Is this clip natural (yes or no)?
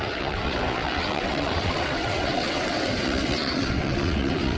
no